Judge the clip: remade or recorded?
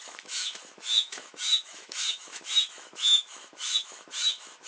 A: remade